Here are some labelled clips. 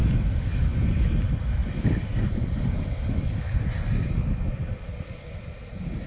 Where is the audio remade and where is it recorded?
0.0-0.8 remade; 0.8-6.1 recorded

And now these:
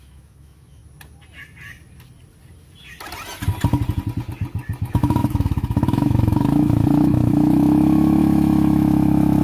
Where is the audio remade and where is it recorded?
0.0-0.8 remade; 0.8-4.8 recorded; 4.8-9.4 remade

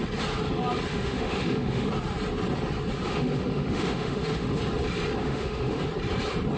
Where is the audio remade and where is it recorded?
0.0-0.9 recorded; 0.9-1.9 remade; 1.9-3.1 recorded; 3.1-4.6 remade; 4.6-5.2 recorded; 5.2-5.8 remade; 5.8-6.6 recorded

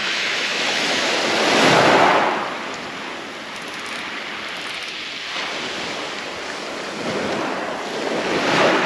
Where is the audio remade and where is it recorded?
0.0-1.1 remade; 1.1-8.9 recorded